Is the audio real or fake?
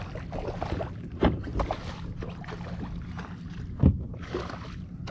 real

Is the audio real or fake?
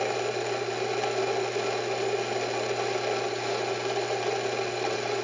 real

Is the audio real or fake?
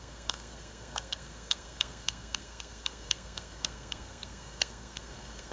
fake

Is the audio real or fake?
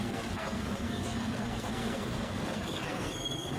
fake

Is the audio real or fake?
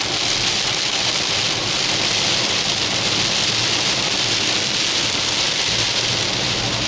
real